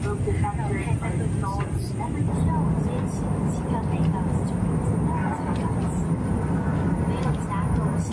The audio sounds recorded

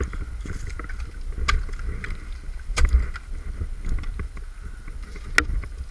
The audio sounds recorded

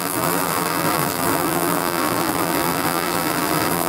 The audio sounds remade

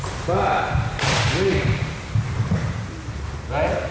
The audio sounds recorded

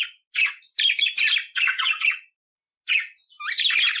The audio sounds recorded